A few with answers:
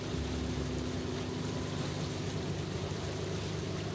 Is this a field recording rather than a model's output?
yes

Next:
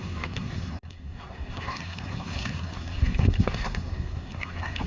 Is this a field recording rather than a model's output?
no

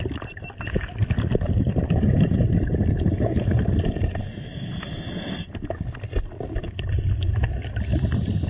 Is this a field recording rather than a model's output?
yes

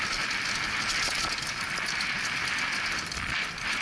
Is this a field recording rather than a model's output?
yes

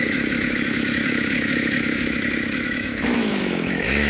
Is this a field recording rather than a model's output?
no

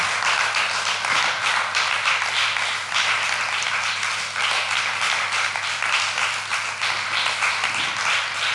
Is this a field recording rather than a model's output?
no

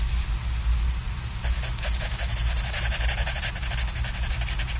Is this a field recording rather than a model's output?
yes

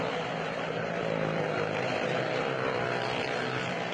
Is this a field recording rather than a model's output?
no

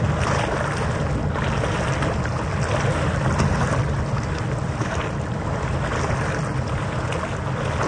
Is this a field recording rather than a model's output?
yes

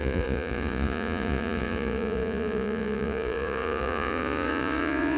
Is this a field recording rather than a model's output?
no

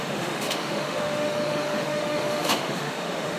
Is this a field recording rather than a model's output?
no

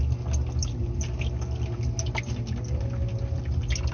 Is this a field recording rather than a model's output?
yes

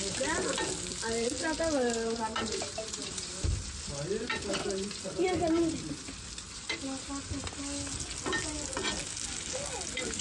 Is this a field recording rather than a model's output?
yes